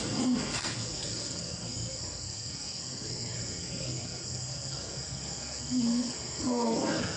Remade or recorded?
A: remade